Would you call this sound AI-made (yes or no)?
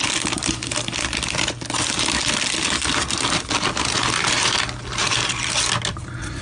no